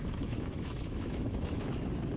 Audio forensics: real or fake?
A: fake